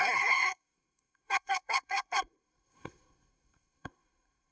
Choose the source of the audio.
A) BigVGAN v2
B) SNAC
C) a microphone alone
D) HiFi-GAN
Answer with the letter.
B